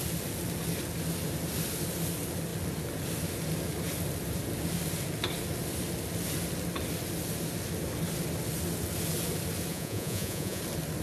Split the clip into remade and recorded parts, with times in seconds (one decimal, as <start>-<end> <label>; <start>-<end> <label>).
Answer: 0.0-9.7 recorded; 9.7-10.6 remade; 10.6-11.0 recorded

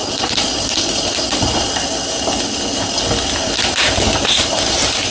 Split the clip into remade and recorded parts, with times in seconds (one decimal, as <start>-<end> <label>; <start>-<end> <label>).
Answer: 0.0-1.7 remade; 1.7-5.1 recorded